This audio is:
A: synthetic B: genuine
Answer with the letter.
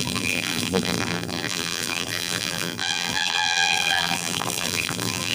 A